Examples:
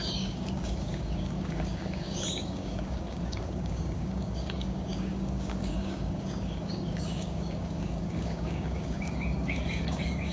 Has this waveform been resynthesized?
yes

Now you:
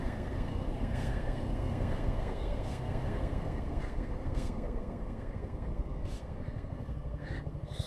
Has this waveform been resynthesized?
yes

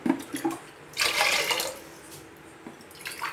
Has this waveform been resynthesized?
no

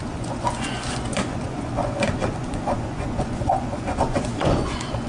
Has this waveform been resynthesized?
yes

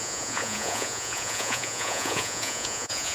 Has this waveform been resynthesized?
yes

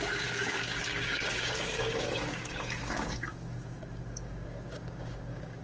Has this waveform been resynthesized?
yes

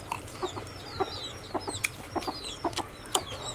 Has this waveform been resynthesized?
no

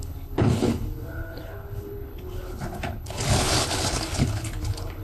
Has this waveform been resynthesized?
yes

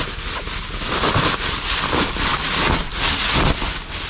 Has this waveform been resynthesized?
no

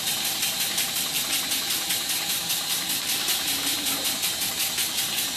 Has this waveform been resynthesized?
no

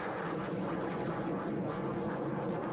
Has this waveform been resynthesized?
yes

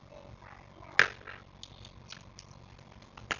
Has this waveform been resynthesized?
no